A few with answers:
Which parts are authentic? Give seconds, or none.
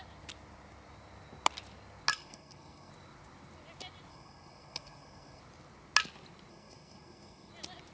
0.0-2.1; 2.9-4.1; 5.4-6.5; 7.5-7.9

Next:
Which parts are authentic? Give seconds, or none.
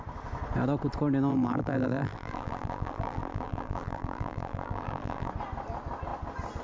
0.0-1.3; 5.3-6.6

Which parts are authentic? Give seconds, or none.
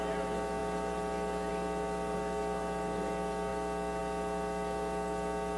0.0-5.6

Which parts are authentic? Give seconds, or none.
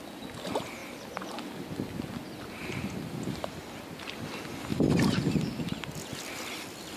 0.0-7.0